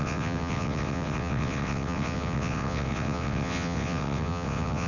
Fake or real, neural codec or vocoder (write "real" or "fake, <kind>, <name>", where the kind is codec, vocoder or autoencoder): fake, vocoder, WaveNeXt